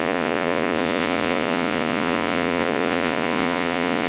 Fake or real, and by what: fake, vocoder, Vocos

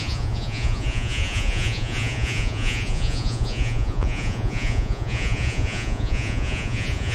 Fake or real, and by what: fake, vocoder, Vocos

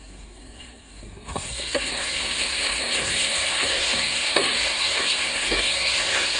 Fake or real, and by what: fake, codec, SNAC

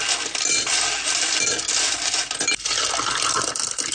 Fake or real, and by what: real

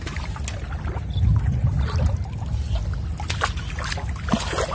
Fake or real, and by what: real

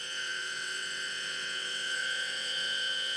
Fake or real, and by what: fake, vocoder, WaveNeXt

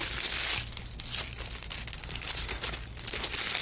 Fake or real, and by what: real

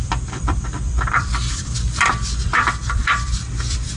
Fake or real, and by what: fake, vocoder, BigVGAN v2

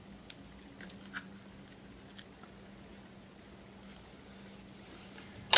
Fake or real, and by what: real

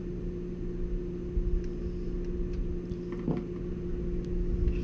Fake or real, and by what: real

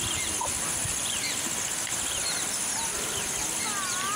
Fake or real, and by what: real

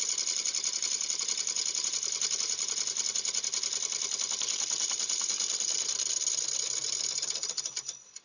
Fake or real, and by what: real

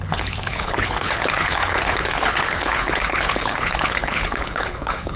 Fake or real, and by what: fake, codec, HILCodec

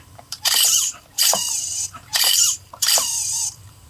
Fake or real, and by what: fake, vocoder, BigVGAN v2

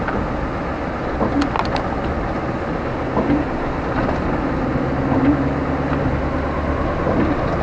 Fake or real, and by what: real